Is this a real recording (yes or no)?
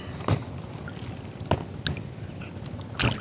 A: yes